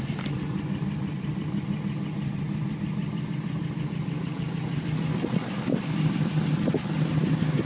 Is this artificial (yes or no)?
no